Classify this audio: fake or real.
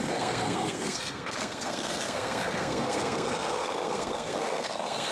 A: fake